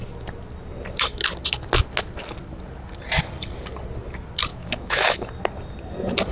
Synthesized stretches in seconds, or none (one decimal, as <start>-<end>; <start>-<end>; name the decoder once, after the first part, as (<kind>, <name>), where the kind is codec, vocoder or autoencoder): 4.5-5.3 (autoencoder, DAC-VAE)